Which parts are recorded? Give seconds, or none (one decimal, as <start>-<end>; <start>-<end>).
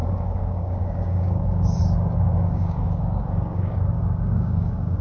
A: none